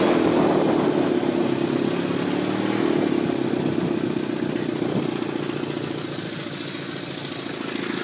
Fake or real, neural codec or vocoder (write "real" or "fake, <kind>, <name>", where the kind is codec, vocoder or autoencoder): real